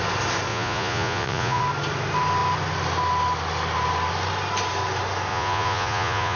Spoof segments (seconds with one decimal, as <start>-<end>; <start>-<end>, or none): 0.5-1.6; 5.3-6.4